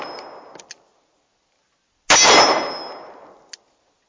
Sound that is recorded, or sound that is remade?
recorded